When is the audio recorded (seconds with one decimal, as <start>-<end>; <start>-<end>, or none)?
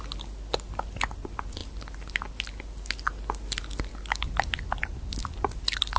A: 0.0-6.0